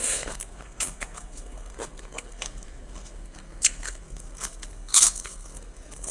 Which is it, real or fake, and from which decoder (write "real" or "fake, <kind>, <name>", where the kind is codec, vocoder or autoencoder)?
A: fake, codec, SNAC